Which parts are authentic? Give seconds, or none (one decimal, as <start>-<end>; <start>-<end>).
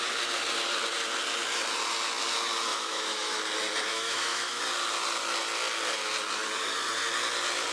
0.0-2.7; 3.4-3.9; 4.6-7.7